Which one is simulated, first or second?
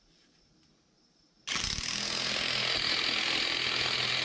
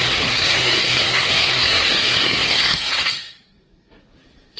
second